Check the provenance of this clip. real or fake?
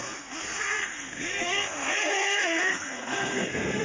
fake